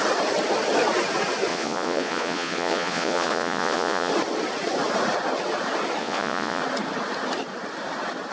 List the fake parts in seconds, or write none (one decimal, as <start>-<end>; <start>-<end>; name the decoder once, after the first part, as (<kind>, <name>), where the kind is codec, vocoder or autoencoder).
1.5-4.1 (vocoder, Vocos); 6.0-6.6